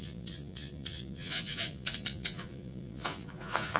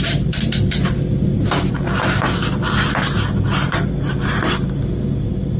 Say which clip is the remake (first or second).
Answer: first